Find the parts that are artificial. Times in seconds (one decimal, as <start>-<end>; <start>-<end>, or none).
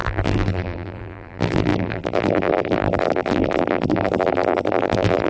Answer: 0.0-5.3